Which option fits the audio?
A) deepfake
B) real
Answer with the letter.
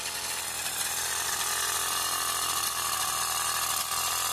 B